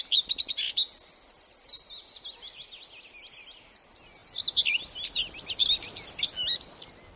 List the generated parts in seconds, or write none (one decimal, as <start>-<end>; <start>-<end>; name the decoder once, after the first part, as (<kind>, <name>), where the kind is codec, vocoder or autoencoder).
none